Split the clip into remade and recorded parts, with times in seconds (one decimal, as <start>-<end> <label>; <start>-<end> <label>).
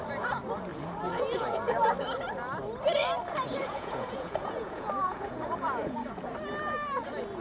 0.0-0.7 recorded; 0.7-1.7 remade; 1.7-3.6 recorded; 3.6-6.2 remade; 6.2-7.4 recorded